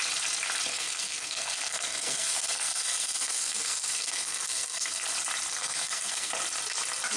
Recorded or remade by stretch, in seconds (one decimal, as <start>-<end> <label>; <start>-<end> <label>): 0.0-0.7 recorded; 0.7-5.0 remade; 5.0-5.5 recorded; 5.5-6.3 remade; 6.3-7.2 recorded